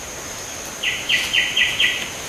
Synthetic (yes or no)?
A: no